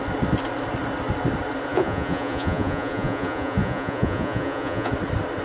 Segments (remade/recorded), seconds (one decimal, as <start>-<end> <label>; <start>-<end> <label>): 0.0-1.7 recorded; 1.7-4.9 remade; 4.9-5.4 recorded